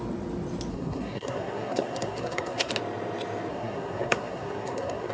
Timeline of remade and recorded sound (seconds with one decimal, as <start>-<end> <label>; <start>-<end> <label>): 0.0-0.7 recorded; 0.7-2.7 remade; 2.7-3.5 recorded; 3.5-5.1 remade

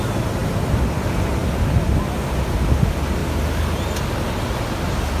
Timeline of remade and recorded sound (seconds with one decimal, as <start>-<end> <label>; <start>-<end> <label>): 0.0-5.2 recorded

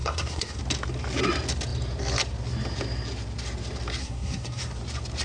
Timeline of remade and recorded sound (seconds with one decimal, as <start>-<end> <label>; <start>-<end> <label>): 0.0-0.6 remade; 0.6-4.0 recorded; 4.0-4.8 remade; 4.8-5.2 recorded

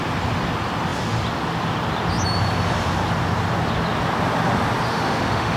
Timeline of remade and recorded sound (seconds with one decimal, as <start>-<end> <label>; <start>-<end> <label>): 0.0-4.9 recorded; 4.9-5.6 remade

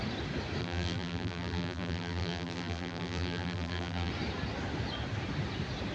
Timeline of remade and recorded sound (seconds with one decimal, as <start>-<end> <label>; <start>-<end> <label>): 0.0-0.6 recorded; 0.6-4.1 remade; 4.1-5.9 recorded

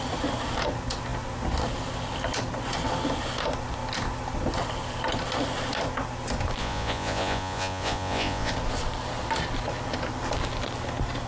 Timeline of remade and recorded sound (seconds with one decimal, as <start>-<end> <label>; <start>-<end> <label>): 0.0-6.6 recorded; 6.6-8.5 remade; 8.5-11.3 recorded

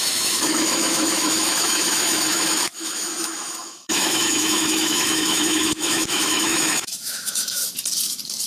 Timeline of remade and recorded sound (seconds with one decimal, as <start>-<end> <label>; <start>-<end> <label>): 0.0-7.6 remade; 7.6-8.5 recorded

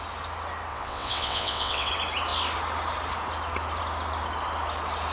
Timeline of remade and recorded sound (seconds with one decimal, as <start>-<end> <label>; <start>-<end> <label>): 0.0-0.7 recorded; 0.7-1.9 remade; 1.9-5.1 recorded